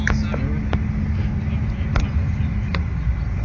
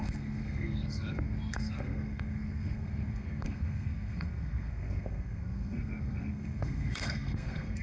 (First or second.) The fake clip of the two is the second